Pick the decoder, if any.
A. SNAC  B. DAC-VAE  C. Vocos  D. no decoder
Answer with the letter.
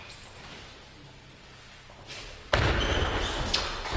D